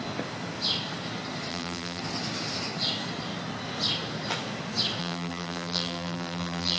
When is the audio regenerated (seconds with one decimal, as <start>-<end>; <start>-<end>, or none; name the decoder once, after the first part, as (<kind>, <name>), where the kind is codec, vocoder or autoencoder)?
1.5-2.0 (vocoder, BigVGAN v2); 5.0-6.8